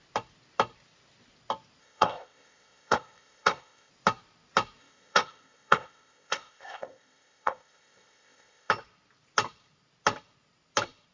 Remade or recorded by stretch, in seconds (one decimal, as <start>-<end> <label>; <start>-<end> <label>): 0.0-1.8 recorded; 1.8-3.9 remade; 3.9-4.8 recorded; 4.8-8.7 remade; 8.7-11.1 recorded